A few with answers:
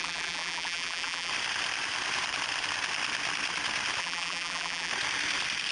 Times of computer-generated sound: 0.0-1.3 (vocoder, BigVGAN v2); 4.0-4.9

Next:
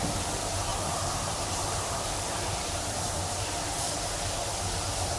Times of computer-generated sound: 0.7-3.7 (vocoder, BigVGAN v2)

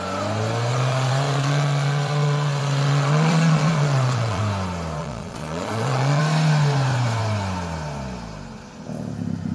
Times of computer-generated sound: 0.7-4.4 (vocoder, Vocos); 5.0-6.2